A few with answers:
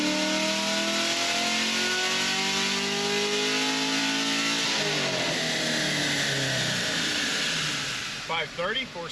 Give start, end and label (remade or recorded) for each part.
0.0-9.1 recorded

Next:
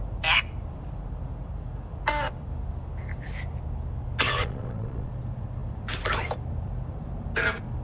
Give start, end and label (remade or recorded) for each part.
0.0-4.4 recorded; 4.4-5.1 remade; 5.1-7.8 recorded